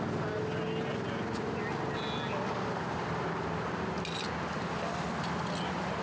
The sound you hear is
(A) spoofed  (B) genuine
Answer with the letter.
B